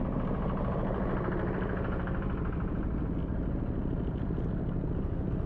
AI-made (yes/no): no